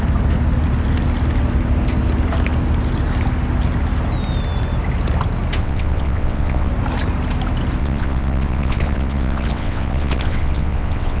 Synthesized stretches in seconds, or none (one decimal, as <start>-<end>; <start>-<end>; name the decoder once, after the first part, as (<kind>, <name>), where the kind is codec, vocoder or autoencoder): 5.6-6.7 (vocoder, WaveNeXt); 7.8-11.2